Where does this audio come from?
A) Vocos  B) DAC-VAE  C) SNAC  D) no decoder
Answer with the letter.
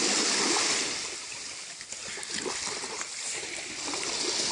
D